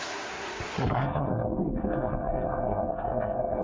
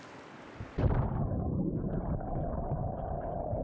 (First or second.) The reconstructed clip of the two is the first